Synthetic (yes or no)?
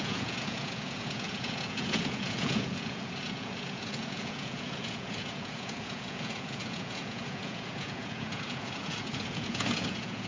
yes